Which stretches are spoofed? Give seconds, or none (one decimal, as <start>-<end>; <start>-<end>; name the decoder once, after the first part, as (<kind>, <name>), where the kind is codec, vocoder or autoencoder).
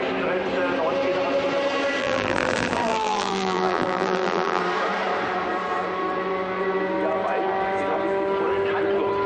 2.0-4.6 (vocoder, BigVGAN v2)